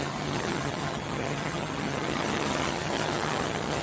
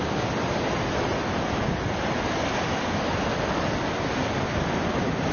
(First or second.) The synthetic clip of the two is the first